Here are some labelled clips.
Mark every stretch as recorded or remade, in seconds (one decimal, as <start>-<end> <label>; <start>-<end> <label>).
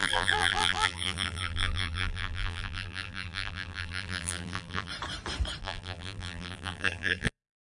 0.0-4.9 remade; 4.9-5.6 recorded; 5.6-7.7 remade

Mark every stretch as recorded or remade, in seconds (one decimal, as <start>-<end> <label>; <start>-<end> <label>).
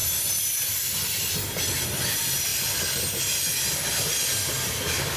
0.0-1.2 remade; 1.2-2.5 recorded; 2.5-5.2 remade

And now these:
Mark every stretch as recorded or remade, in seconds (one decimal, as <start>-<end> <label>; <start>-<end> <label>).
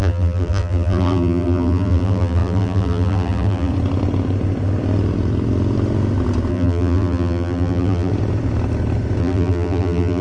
0.0-3.7 remade; 3.7-6.5 recorded; 6.5-8.1 remade; 8.1-9.2 recorded; 9.2-10.2 remade